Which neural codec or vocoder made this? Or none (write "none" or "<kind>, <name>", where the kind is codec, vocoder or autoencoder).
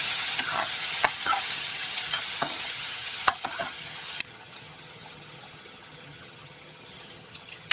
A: vocoder, HiFi-GAN